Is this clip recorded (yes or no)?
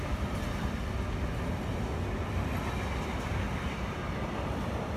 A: yes